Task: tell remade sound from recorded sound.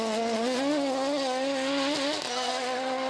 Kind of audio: recorded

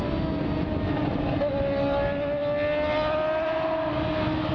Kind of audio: recorded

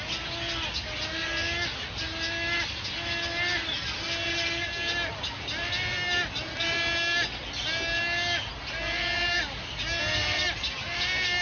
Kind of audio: recorded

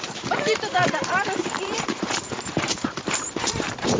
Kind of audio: remade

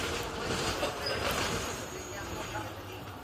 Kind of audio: remade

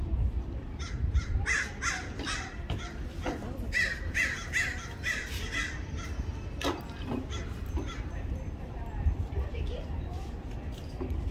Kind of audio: remade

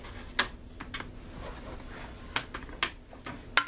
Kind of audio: recorded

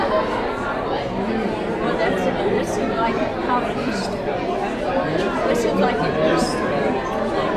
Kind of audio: recorded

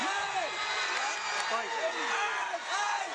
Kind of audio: recorded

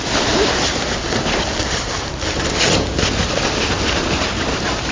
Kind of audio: recorded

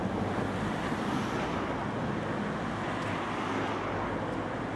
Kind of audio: recorded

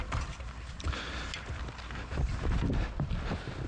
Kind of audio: recorded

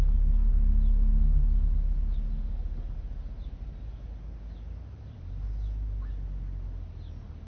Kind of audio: recorded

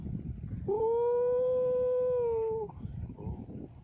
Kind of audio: recorded